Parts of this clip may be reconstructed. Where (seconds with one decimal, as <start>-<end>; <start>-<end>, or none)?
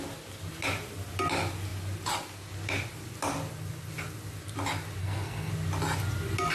5.0-5.5